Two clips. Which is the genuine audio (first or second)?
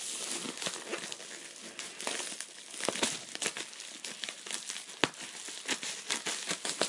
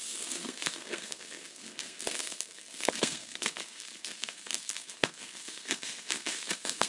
first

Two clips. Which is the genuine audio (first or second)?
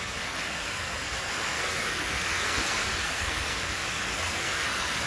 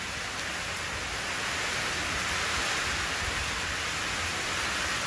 second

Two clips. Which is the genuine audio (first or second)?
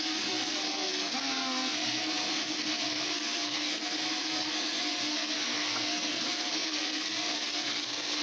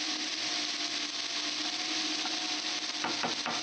second